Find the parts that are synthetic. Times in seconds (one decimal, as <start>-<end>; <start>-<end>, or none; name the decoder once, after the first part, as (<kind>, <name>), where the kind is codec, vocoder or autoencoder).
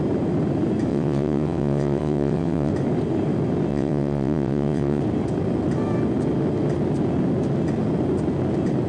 0.9-2.7 (vocoder, WaveNeXt); 3.7-5.0